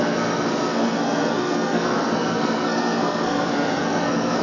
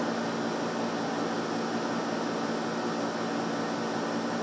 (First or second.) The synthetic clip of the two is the first